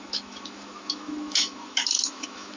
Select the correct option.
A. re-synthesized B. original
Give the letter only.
A